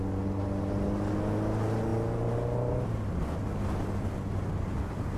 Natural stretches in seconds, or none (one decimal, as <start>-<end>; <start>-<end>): 0.0-5.2

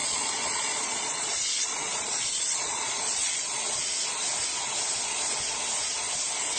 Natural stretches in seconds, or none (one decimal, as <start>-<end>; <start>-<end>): 3.3-6.6

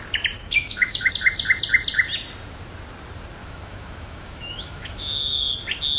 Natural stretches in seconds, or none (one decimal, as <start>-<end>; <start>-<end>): 0.0-0.4; 1.1-3.4; 5.5-6.0

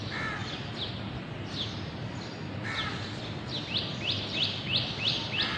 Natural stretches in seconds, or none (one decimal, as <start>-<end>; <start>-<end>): 0.0-5.6

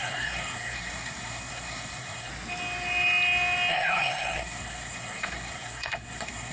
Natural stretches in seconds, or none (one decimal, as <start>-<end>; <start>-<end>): 2.3-3.7